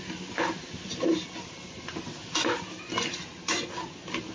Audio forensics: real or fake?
real